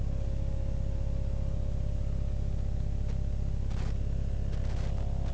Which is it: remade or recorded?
recorded